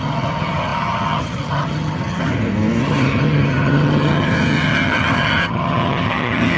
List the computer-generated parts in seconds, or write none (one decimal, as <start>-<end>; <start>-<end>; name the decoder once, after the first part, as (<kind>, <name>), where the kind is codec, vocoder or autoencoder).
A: 0.0-2.3 (vocoder, HiFi-GAN); 2.8-6.6